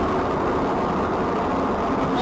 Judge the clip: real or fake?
real